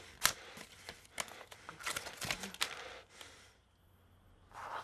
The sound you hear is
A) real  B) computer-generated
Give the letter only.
A